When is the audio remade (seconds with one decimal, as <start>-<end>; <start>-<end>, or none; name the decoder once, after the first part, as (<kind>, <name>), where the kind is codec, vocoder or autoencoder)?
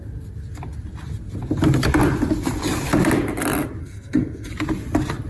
3.8-4.5 (codec, SNAC)